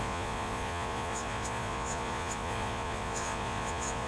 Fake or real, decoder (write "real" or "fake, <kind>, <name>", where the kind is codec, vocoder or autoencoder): fake, vocoder, Vocos